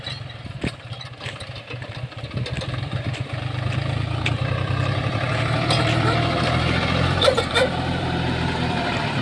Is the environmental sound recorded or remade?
remade